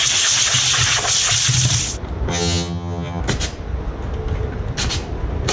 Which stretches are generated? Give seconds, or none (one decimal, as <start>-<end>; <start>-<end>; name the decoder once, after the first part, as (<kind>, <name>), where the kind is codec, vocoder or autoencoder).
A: 2.3-3.2 (vocoder, HiFi-GAN)